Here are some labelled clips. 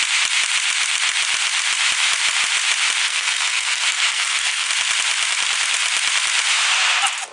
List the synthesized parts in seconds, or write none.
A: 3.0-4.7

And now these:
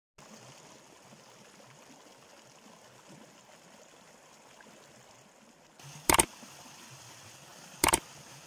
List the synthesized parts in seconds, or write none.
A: none

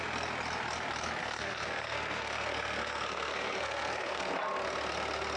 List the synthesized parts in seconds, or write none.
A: 1.2-4.4

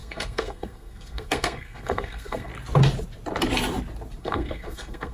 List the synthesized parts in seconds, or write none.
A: 0.0-2.5; 4.2-5.1

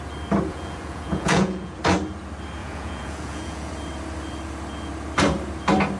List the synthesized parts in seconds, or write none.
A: 0.5-1.8; 2.6-3.7